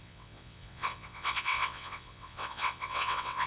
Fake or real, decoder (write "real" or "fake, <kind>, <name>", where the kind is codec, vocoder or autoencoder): fake, vocoder, WaveNeXt